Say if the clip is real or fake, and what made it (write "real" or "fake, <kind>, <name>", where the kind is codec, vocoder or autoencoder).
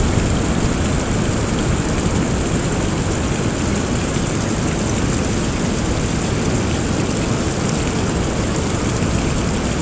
real